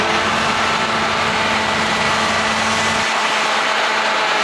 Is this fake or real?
real